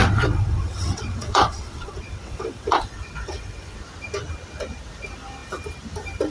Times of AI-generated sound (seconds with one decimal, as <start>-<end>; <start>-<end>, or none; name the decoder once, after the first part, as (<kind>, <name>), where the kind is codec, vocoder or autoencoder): 0.0-3.8 (vocoder, WaveNeXt)